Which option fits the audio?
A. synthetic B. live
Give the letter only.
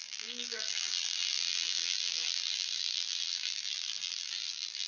A